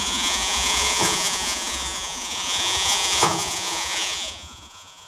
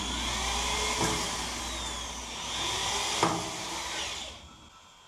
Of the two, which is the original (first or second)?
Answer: second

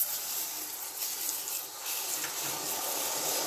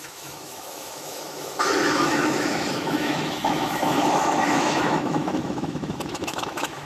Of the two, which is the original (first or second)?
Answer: first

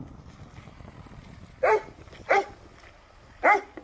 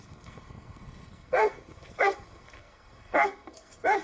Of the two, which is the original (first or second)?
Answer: first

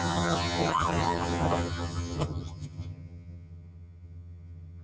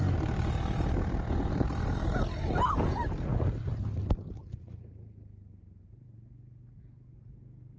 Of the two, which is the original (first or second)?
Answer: second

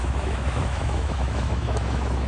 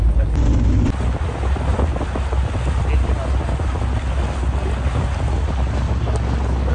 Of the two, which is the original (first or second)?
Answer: second